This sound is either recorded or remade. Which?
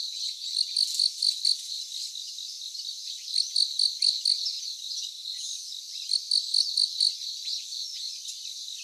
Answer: recorded